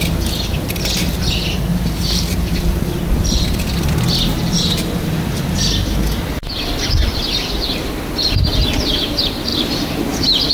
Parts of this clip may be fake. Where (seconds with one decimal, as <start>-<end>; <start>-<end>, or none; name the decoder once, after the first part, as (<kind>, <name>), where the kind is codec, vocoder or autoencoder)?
1.7-2.5 (vocoder, BigVGAN v2); 7.1-8.0; 9.5-10.5